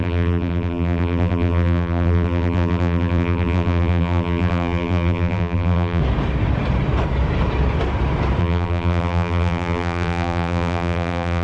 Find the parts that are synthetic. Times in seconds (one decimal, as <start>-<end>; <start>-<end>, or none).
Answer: 0.0-6.0; 8.4-11.4